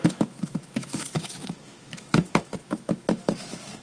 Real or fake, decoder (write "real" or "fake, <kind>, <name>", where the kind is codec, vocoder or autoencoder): fake, autoencoder, DAC-VAE